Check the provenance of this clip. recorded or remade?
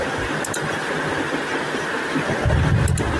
recorded